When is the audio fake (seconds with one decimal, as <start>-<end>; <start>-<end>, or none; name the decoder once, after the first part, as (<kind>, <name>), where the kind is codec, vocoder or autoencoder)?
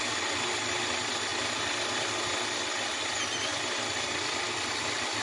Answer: none